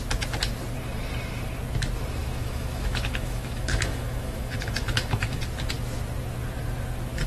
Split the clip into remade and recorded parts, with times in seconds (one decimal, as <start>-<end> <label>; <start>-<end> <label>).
0.0-2.2 recorded; 2.2-5.4 remade; 5.4-7.3 recorded